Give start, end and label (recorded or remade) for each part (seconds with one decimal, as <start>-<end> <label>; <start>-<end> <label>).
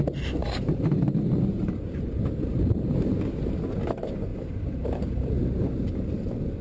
0.0-0.4 recorded; 0.4-3.1 remade; 3.1-4.3 recorded; 4.3-5.3 remade; 5.3-6.6 recorded